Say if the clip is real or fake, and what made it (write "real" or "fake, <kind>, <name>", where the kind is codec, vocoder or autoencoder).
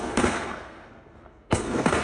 fake, codec, SNAC